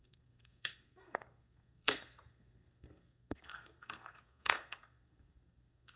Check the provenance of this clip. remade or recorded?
remade